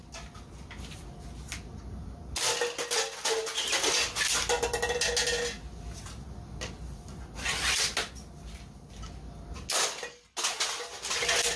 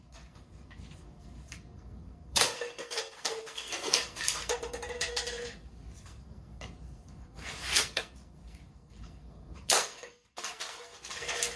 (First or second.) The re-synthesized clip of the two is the second